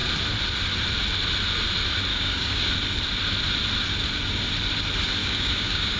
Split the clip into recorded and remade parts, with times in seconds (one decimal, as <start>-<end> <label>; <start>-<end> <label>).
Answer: 0.0-2.1 recorded; 2.1-2.7 remade; 2.7-5.2 recorded; 5.2-6.0 remade